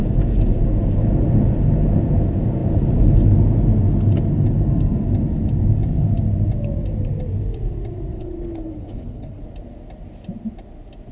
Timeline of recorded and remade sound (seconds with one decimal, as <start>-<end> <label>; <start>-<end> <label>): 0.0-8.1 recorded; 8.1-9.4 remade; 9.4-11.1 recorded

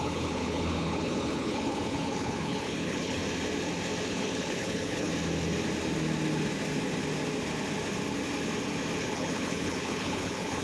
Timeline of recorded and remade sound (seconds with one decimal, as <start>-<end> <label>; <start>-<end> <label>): 0.0-3.2 remade; 3.2-4.1 recorded; 4.1-5.1 remade; 5.1-9.0 recorded; 9.0-10.6 remade

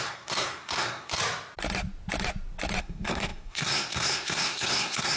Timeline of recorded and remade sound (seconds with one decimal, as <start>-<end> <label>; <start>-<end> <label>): 0.0-1.2 remade; 1.2-2.8 recorded; 2.8-5.2 remade